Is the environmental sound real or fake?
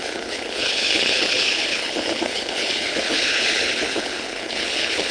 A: fake